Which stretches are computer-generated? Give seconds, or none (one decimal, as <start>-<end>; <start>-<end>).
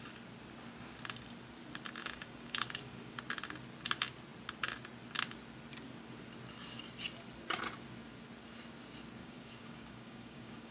2.0-3.2; 9.2-10.7